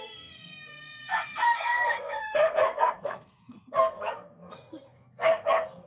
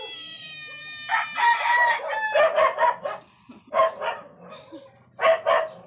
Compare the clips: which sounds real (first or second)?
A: second